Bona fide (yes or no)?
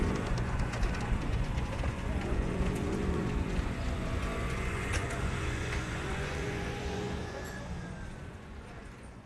no